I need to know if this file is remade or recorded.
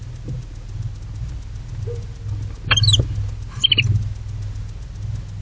recorded